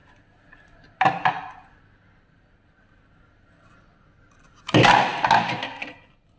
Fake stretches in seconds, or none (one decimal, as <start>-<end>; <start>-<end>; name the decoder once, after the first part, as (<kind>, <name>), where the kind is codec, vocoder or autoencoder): none